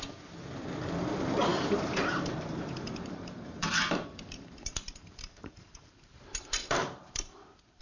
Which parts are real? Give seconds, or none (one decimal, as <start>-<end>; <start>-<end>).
0.0-1.5; 6.2-6.8